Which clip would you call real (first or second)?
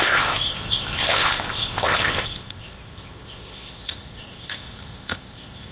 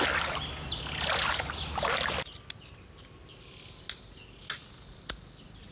second